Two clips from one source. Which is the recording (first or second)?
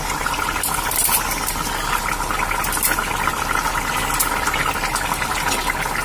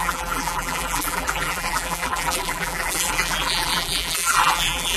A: first